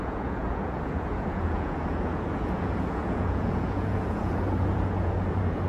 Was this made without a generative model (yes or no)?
no